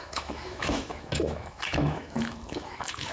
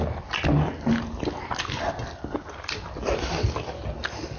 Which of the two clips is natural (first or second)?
second